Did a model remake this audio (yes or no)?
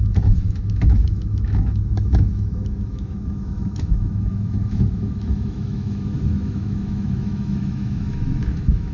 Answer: yes